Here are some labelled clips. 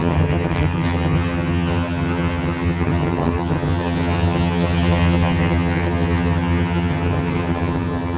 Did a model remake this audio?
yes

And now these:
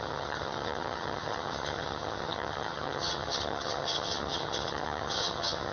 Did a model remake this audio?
yes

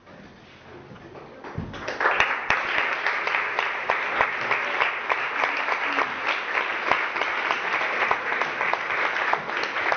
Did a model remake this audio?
no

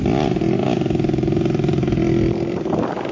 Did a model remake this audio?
no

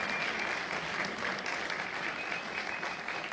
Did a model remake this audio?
no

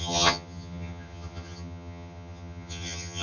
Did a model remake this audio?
yes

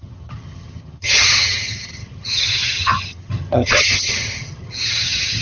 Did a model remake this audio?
yes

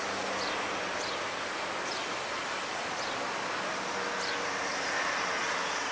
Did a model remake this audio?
no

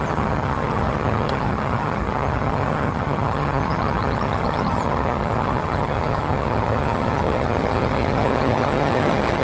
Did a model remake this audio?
yes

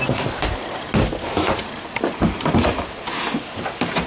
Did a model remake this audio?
no